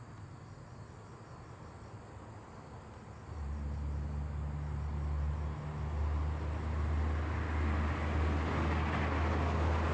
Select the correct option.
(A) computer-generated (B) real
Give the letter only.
B